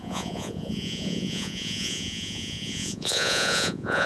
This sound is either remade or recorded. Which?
remade